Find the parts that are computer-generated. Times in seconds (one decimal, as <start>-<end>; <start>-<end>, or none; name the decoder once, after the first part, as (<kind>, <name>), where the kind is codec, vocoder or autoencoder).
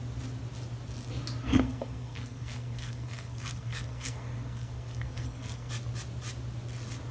1.4-5.7 (codec, SNAC)